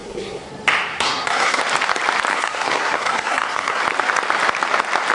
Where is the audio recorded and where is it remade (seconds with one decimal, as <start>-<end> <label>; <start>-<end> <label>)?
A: 0.0-0.5 remade; 0.5-0.9 recorded; 0.9-1.6 remade; 1.6-2.3 recorded; 2.3-3.8 remade; 3.8-5.1 recorded